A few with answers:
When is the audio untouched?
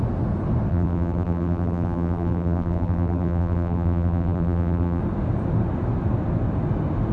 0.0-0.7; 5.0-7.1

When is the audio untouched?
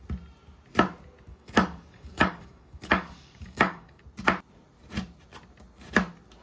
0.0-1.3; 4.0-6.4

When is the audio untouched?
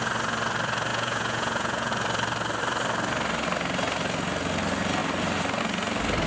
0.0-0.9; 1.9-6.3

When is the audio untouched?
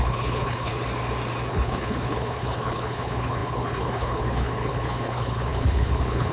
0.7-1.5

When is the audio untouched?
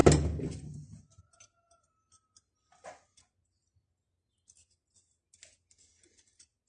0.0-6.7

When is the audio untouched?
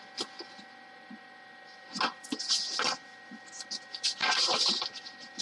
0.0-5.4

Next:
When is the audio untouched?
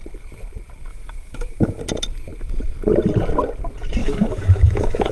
0.0-0.9; 1.8-4.0